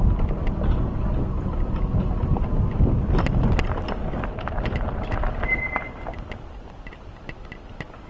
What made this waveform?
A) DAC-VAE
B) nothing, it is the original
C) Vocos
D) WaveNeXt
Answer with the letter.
B